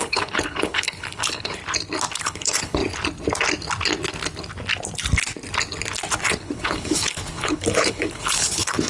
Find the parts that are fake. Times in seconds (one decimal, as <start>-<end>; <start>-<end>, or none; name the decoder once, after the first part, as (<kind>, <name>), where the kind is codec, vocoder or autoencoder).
0.0-1.6 (codec, HILCodec); 2.2-2.8; 6.2-8.9